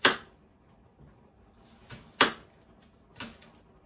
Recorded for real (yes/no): yes